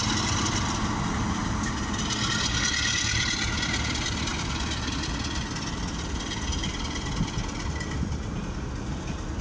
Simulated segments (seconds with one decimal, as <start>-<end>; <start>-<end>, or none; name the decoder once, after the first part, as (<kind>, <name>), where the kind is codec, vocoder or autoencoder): none